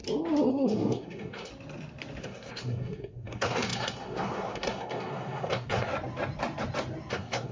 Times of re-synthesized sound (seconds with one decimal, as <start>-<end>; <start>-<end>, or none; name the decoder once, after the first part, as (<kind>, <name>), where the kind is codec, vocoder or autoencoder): 0.5-1.5 (codec, SNAC); 2.2-5.9; 7.1-7.5